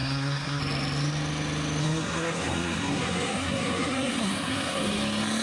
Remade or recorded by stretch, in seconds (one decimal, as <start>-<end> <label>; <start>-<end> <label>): 0.0-0.6 remade; 0.6-1.8 recorded; 1.8-5.0 remade; 5.0-5.4 recorded

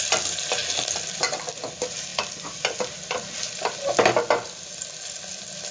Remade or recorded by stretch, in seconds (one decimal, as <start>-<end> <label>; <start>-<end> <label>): 0.0-5.7 recorded

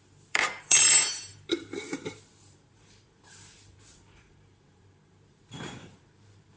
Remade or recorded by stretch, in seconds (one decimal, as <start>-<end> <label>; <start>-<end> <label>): 0.0-6.6 remade

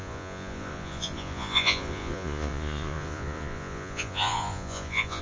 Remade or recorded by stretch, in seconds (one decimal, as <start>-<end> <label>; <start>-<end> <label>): 0.0-5.2 remade

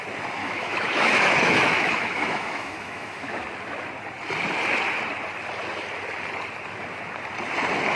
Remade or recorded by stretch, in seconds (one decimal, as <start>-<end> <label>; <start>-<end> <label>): 0.0-0.4 recorded; 0.4-3.3 remade; 3.3-8.0 recorded